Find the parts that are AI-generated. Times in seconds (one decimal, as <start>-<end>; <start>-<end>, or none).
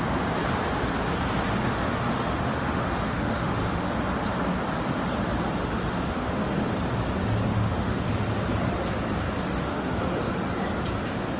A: 1.6-4.0; 5.6-6.7; 7.5-8.1; 9.6-10.2